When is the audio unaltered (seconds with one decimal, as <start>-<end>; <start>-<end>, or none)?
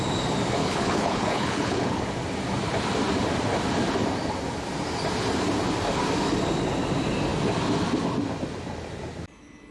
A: 0.0-0.6; 2.0-9.7